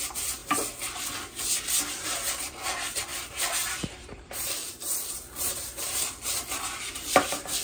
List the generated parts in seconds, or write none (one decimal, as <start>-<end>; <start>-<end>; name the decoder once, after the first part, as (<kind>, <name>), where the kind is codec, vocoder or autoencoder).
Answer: 0.0-0.4 (vocoder, BigVGAN v2); 2.3-7.6